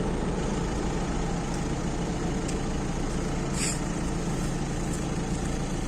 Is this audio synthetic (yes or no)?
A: no